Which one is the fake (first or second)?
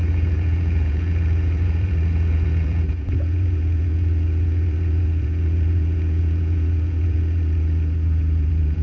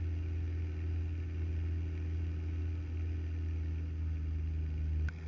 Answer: first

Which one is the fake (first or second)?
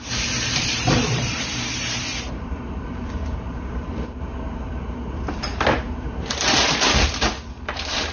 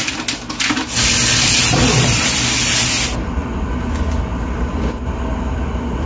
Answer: first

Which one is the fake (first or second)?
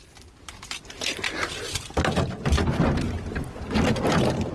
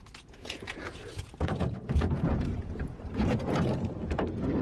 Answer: second